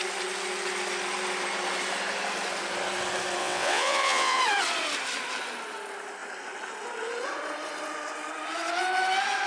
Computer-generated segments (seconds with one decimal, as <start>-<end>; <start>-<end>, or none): 3.4-4.4